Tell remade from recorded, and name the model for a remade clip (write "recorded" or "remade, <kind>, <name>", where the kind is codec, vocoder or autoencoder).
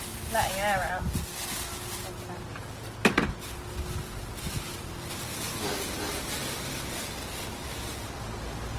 recorded